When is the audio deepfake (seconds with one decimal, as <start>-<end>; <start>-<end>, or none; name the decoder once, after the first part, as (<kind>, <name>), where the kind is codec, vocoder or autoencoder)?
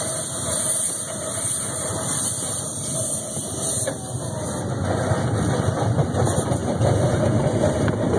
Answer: none